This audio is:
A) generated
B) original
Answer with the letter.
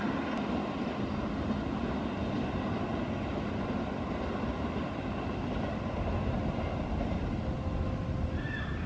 B